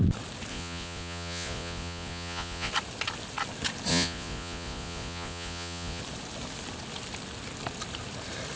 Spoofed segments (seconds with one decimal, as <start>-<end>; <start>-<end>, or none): 0.5-2.7; 3.9-6.0